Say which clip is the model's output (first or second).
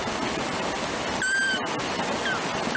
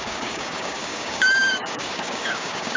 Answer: second